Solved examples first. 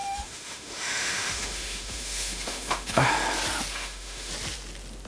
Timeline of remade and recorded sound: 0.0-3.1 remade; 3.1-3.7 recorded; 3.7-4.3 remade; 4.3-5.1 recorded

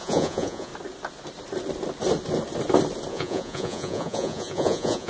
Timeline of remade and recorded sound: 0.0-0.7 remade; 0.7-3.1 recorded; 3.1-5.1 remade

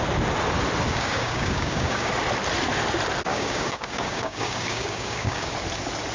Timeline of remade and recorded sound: 0.0-0.9 recorded; 0.9-2.1 remade; 2.1-3.3 recorded; 3.3-5.5 remade; 5.5-6.1 recorded